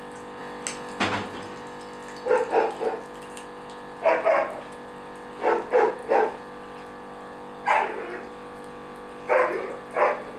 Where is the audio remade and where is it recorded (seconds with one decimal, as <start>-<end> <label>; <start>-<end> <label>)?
0.0-10.4 recorded